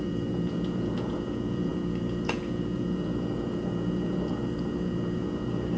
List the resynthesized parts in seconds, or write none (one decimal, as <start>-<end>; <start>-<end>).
0.0-5.8

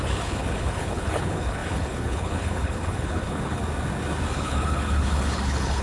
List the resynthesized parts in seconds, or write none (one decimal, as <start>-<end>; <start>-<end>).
0.0-3.6; 4.3-5.8

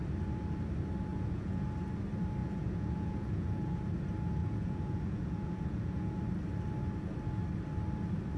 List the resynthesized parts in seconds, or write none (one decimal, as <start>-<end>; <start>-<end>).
1.1-1.7; 2.4-3.8; 4.4-6.2

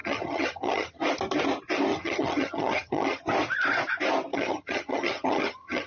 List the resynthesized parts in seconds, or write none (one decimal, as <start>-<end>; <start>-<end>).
0.0-1.0; 1.9-3.2; 4.3-5.9

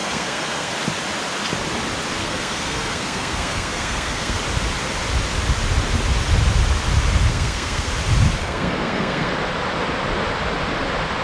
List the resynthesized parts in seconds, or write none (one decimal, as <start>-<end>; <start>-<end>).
0.0-0.7; 2.2-4.4; 7.3-7.9; 8.4-9.3

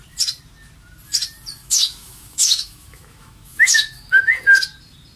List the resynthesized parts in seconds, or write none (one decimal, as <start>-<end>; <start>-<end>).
1.6-4.3